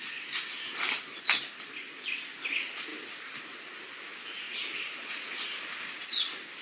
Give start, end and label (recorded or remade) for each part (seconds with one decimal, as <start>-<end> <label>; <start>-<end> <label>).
0.0-6.6 recorded

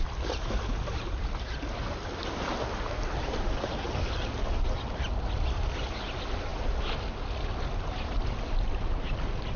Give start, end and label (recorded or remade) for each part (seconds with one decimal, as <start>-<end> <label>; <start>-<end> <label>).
0.0-9.6 recorded

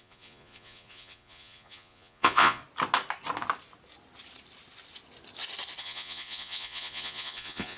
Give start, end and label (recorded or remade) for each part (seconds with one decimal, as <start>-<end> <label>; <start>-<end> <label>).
0.0-2.6 remade; 2.6-5.8 recorded; 5.8-7.8 remade

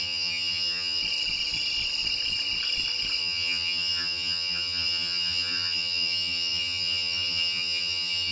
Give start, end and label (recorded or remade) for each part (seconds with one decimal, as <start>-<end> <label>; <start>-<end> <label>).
0.0-1.0 remade; 1.0-3.2 recorded; 3.2-8.3 remade